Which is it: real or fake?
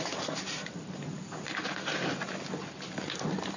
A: real